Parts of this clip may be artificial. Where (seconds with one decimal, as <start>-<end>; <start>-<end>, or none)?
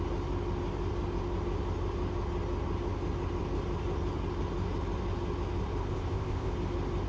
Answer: 5.9-6.5